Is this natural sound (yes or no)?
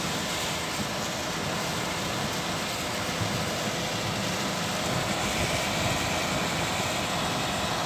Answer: yes